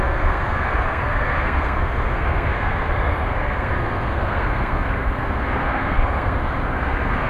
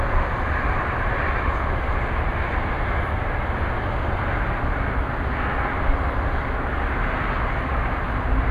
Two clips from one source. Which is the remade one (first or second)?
first